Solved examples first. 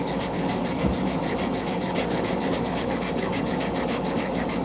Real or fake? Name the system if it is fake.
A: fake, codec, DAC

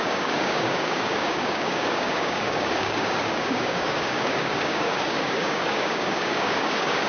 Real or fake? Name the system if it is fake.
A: fake, codec, DAC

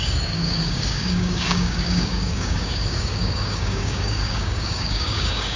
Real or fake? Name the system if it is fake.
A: fake, codec, DAC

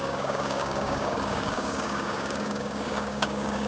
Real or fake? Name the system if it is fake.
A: fake, codec, DAC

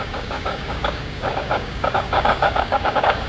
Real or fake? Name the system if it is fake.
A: fake, codec, DAC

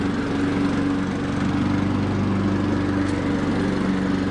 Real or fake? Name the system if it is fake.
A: real